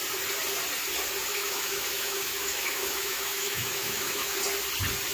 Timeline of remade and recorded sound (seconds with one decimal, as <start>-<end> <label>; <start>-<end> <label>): 0.0-1.3 recorded; 1.3-4.4 remade; 4.4-5.1 recorded